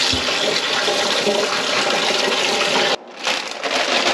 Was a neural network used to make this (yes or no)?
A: no